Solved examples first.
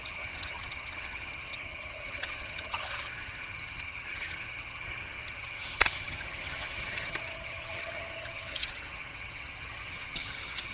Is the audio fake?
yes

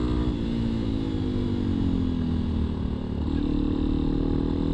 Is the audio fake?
no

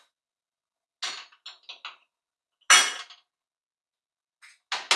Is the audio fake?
no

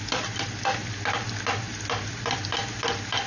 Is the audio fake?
no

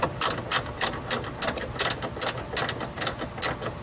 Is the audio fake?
no